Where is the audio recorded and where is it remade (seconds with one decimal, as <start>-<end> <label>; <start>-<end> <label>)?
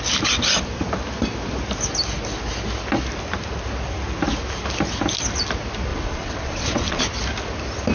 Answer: 0.0-5.9 recorded; 5.9-7.0 remade; 7.0-7.9 recorded